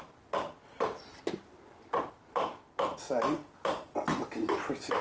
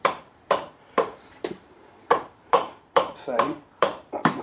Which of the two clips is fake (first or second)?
second